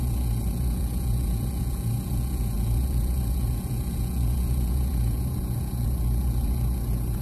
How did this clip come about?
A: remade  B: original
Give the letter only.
A